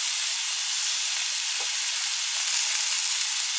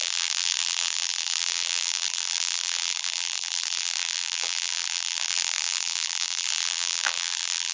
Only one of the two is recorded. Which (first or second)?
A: first